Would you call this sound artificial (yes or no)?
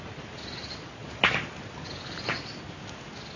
no